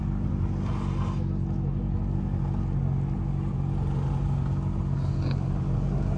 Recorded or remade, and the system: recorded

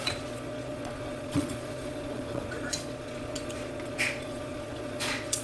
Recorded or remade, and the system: remade, vocoder, Vocos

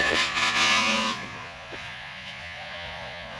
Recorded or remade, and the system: remade, vocoder, Vocos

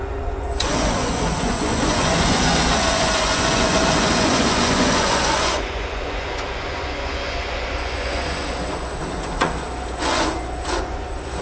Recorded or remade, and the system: remade, vocoder, Vocos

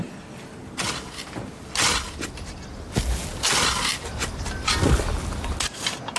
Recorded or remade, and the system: recorded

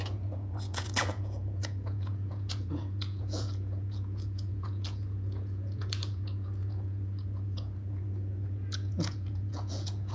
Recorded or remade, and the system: remade, vocoder, Vocos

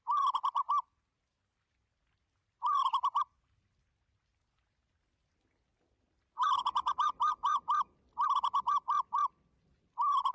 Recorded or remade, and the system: recorded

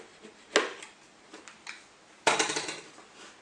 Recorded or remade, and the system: recorded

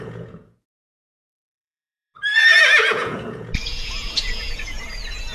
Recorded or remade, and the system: remade, vocoder, Vocos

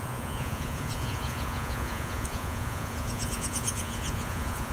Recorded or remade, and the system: remade, vocoder, Vocos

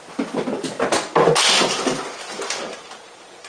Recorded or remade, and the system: recorded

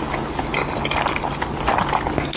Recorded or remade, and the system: recorded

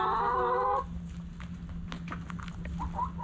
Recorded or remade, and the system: recorded